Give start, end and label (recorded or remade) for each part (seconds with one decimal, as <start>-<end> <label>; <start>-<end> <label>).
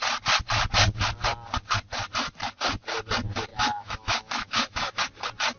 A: 0.0-3.5 recorded; 3.5-5.0 remade; 5.0-5.6 recorded